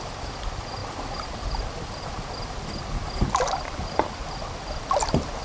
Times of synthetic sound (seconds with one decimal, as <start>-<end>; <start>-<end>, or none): none